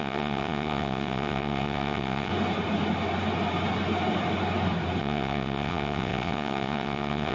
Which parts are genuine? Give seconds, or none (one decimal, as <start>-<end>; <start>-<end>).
2.3-5.0